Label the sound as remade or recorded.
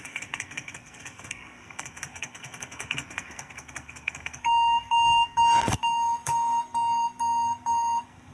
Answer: remade